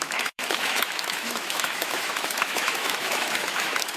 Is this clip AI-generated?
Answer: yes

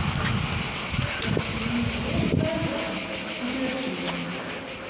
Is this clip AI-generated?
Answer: no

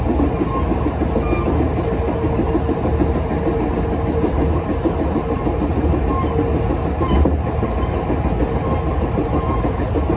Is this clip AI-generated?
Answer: no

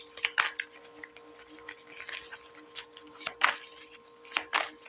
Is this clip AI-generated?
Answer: no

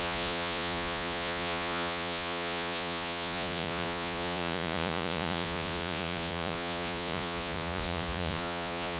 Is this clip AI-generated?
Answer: yes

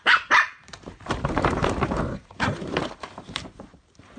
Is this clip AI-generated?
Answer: yes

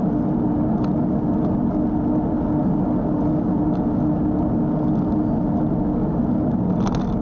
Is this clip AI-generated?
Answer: no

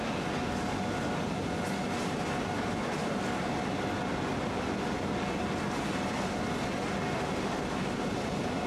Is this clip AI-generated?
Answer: no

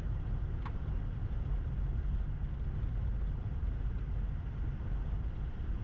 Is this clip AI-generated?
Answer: no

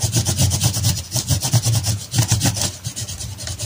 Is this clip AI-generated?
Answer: no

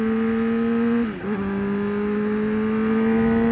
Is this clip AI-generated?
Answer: no